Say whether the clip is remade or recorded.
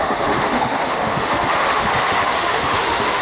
remade